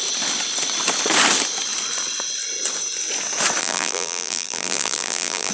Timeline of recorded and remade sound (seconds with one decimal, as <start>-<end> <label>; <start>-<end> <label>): 0.0-3.6 recorded; 3.6-5.5 remade